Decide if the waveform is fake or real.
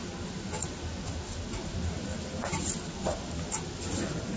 real